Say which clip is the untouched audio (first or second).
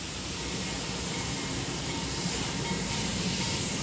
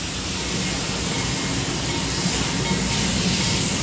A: second